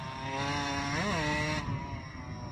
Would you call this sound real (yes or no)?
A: yes